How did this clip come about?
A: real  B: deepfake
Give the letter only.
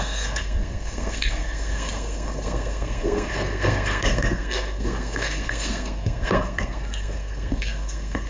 B